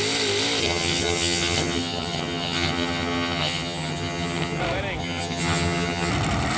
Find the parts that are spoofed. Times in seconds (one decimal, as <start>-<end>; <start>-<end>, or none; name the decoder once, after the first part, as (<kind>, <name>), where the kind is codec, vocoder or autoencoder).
0.6-4.6 (vocoder, HiFi-GAN); 5.0-6.1